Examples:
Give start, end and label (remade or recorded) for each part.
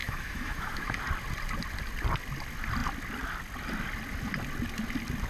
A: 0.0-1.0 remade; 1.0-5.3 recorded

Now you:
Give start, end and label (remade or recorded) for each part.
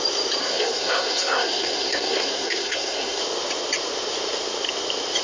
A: 0.0-0.4 recorded; 0.4-3.2 remade; 3.2-5.2 recorded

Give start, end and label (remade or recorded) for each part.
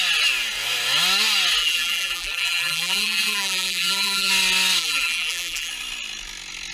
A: 0.0-1.6 recorded; 1.6-4.3 remade; 4.3-4.8 recorded; 4.8-5.7 remade; 5.7-6.7 recorded